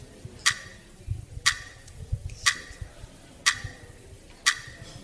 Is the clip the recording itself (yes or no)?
yes